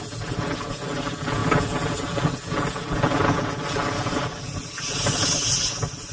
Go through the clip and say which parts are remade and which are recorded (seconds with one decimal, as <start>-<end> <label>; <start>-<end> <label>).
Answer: 0.0-6.1 recorded